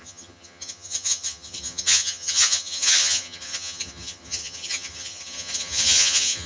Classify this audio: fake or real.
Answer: fake